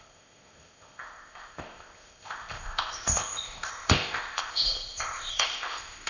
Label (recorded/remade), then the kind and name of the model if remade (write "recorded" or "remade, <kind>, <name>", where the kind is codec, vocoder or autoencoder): remade, codec, ZipCodec